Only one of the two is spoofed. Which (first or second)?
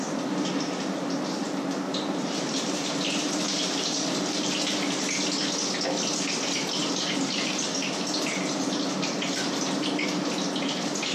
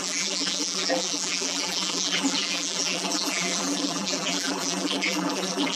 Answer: second